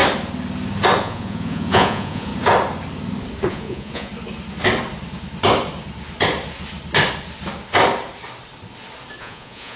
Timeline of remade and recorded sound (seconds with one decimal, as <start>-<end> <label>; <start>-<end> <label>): 0.0-1.0 recorded; 1.0-2.3 remade; 2.3-3.5 recorded; 3.5-4.1 remade; 4.1-9.2 recorded; 9.2-9.8 remade